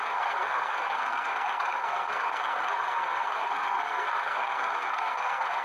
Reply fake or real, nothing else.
fake